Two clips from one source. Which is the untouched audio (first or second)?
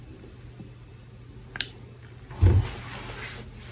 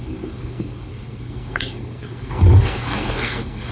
first